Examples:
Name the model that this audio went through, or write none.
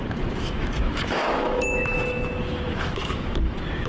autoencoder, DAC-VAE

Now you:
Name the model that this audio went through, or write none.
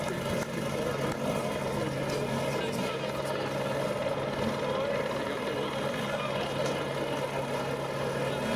none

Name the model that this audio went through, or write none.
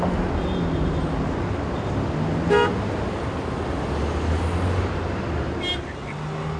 none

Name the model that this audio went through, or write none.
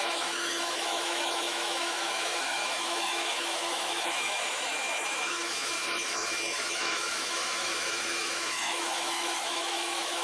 autoencoder, DAC-VAE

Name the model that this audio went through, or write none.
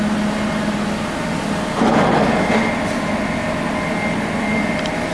none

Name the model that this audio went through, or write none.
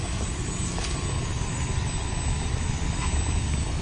none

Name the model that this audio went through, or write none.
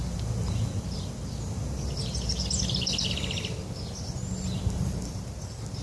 none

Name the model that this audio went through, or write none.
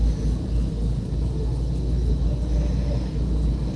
none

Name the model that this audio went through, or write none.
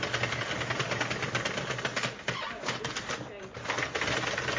none